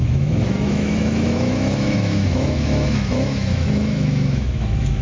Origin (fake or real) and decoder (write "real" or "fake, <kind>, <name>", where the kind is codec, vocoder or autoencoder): fake, autoencoder, DAC-VAE